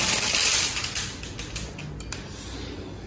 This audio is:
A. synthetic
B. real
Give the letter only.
B